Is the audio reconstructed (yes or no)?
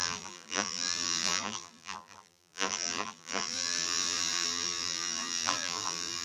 yes